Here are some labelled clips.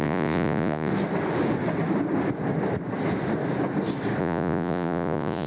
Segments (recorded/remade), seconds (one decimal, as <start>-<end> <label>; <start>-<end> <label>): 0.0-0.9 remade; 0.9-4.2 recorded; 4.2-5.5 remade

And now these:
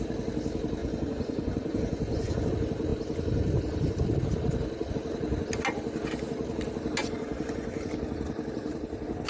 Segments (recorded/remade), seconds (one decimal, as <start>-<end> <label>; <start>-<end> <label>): 0.0-0.8 recorded; 0.8-2.5 remade; 2.5-7.0 recorded; 7.0-7.9 remade; 7.9-9.3 recorded

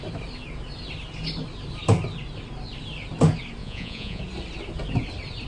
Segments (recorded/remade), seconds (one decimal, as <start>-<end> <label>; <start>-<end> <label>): 0.0-3.6 recorded; 3.6-4.2 remade; 4.2-5.5 recorded